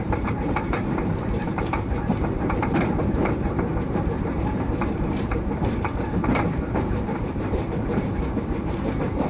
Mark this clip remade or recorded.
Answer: remade